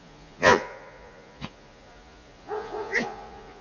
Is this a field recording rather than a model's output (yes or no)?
no